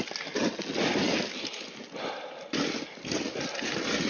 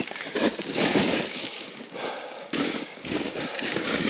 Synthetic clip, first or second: second